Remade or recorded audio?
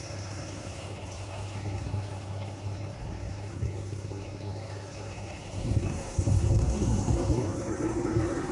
remade